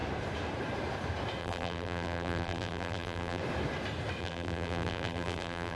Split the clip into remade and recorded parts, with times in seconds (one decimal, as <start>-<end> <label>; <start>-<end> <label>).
0.0-1.4 recorded; 1.4-3.4 remade; 3.4-4.2 recorded; 4.2-5.8 remade